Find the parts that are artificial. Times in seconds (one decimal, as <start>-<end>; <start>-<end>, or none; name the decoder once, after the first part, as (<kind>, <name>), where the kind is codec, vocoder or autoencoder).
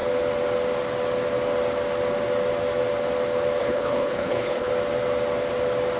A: 3.6-4.7 (codec, HILCodec)